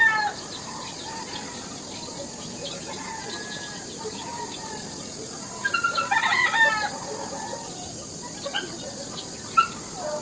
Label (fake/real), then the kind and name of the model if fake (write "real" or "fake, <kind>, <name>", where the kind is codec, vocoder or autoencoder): real